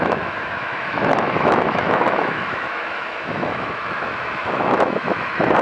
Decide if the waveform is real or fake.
fake